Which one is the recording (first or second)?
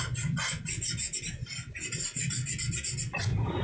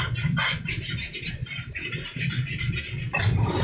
first